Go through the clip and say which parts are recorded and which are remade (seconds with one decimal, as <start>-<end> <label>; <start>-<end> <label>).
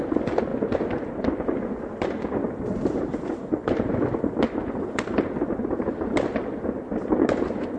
0.0-7.8 recorded